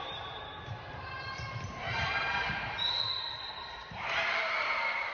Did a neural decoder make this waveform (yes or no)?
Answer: yes